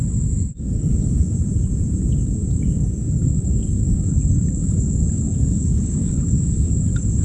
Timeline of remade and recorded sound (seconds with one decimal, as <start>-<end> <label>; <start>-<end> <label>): 0.0-0.5 recorded; 0.5-1.3 remade; 1.3-2.4 recorded; 2.4-6.7 remade; 6.7-7.2 recorded